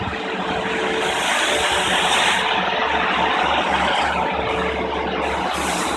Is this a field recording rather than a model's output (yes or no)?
no